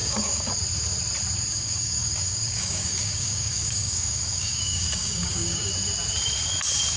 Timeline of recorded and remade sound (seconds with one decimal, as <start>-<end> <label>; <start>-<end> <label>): 0.0-0.5 remade; 0.5-1.5 recorded; 1.5-5.7 remade; 5.7-7.0 recorded